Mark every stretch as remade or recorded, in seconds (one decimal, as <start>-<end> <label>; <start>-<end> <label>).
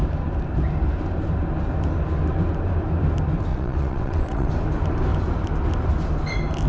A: 0.0-3.5 recorded; 3.5-4.5 remade; 4.5-6.7 recorded